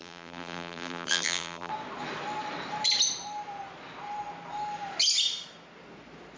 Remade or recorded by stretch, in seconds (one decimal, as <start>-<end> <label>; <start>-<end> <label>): 0.0-1.7 remade; 1.7-6.4 recorded